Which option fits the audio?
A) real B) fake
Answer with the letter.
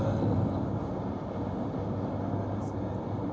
A